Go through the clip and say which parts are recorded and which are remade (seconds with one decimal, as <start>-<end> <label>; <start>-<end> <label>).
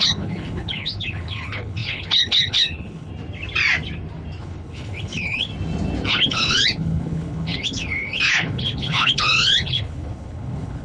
0.0-3.1 remade; 3.1-4.4 recorded; 4.4-5.5 remade; 5.5-6.1 recorded; 6.1-10.8 remade